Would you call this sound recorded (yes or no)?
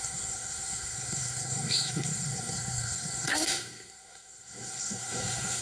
no